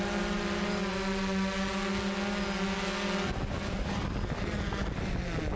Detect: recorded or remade recorded